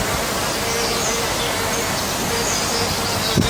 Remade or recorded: recorded